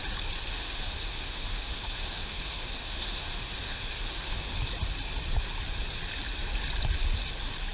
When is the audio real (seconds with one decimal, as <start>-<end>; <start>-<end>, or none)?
0.0-0.6; 4.6-7.7